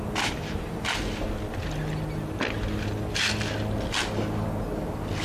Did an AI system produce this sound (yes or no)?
no